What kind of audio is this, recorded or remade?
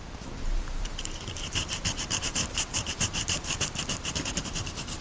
remade